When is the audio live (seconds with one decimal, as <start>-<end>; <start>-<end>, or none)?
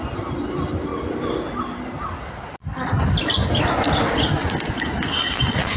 0.0-5.8